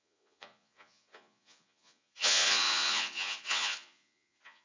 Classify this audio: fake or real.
fake